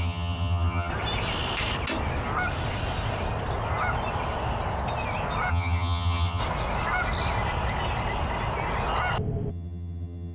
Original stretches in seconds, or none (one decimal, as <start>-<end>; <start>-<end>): 0.9-5.5; 6.4-9.5